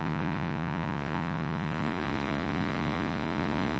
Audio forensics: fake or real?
fake